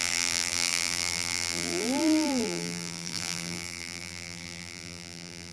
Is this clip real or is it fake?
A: fake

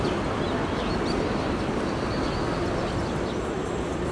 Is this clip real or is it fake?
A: fake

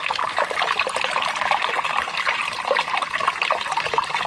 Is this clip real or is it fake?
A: real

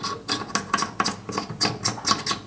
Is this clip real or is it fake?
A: real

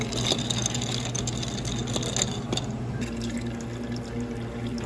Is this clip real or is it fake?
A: real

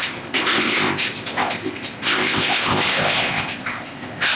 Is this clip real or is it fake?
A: fake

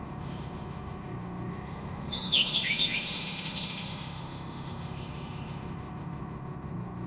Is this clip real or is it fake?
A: fake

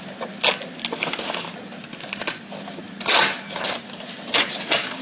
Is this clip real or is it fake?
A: real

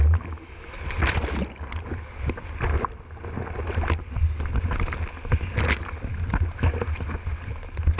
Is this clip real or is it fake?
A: real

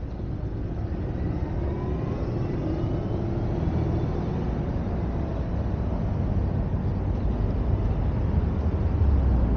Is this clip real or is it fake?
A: real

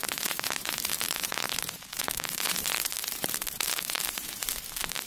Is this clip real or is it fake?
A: fake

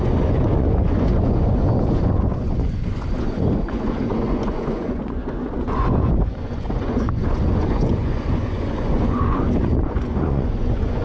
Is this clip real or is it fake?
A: fake